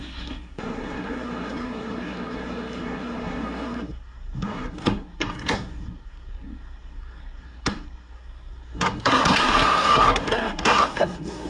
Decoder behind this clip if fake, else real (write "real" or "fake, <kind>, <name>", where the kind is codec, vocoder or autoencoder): fake, codec, SNAC